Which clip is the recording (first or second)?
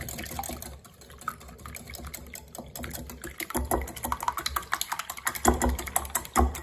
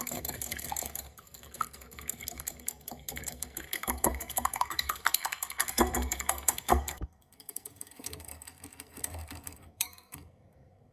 first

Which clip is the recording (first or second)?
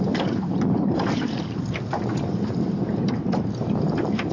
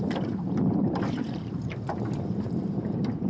first